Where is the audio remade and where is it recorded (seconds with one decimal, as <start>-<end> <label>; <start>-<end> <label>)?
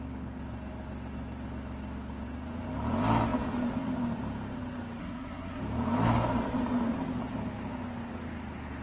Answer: 0.0-5.0 recorded; 5.0-5.6 remade; 5.6-8.8 recorded